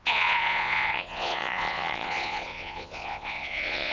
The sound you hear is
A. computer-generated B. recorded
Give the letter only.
A